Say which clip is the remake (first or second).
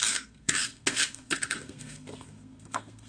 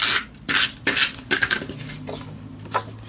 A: first